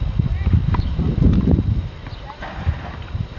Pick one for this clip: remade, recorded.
remade